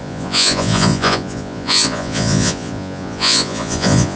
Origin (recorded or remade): remade